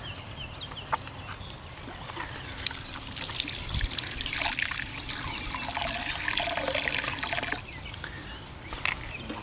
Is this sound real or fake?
real